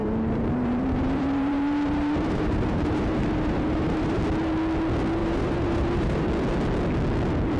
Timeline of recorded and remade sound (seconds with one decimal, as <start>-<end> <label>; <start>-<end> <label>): 0.0-4.2 remade; 4.2-5.2 recorded; 5.2-6.3 remade; 6.3-7.6 recorded